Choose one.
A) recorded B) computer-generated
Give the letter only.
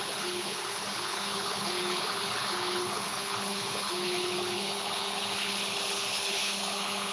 B